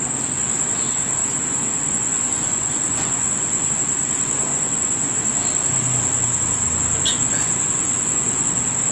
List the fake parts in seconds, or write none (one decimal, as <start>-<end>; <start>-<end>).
1.2-3.7; 4.5-5.1; 7.1-8.4